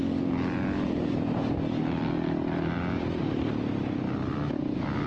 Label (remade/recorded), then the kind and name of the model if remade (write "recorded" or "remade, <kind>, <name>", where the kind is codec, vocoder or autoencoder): recorded